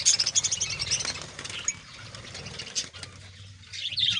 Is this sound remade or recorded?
recorded